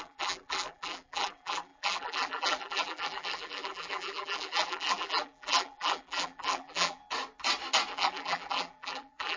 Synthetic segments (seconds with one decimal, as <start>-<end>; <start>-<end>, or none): 0.0-7.0; 7.9-9.4